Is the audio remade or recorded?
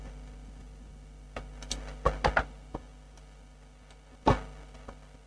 recorded